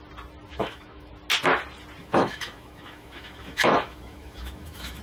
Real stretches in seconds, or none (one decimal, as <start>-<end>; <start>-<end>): 0.0-0.5; 1.1-2.0